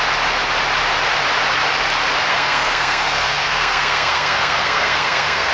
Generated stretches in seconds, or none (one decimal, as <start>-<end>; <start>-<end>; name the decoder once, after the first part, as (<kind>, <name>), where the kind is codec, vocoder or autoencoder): 2.3-5.5 (codec, SNAC)